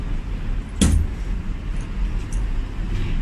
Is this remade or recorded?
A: recorded